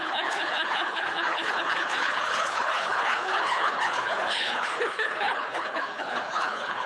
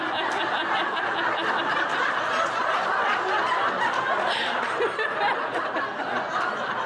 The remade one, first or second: first